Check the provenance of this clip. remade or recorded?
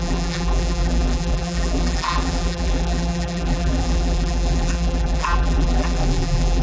remade